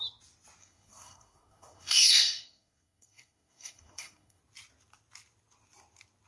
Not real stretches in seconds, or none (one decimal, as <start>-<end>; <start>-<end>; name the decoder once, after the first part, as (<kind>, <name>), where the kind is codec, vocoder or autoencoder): 0.6-4.4 (codec, SNAC)